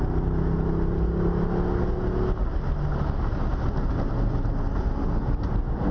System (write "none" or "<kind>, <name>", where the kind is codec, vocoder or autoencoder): none